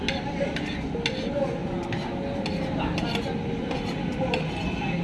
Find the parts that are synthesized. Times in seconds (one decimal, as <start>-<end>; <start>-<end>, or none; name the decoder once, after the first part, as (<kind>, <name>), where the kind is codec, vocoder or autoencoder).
none